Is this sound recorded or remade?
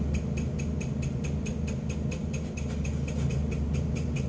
recorded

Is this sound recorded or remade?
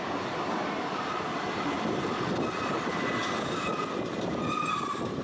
recorded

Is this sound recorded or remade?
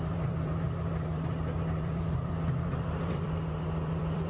remade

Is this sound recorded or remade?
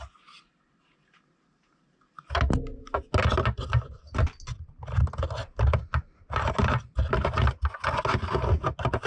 recorded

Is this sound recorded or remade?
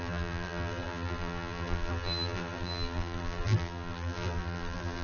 remade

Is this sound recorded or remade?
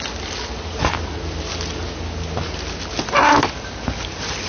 recorded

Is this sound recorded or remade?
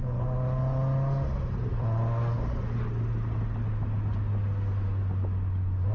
recorded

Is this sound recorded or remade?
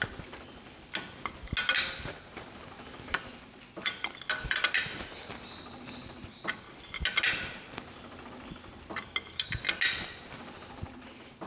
recorded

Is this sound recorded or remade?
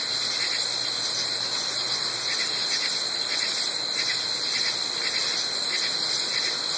recorded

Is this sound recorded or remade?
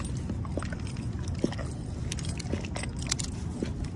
recorded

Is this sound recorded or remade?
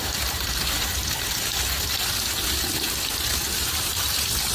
recorded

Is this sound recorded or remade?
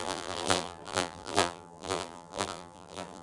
remade